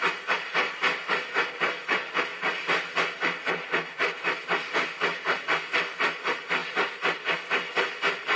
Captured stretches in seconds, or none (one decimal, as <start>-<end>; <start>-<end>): 0.0-8.4